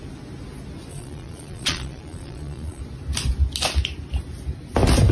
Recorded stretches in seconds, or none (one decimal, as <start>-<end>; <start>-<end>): 0.0-0.9; 2.8-5.1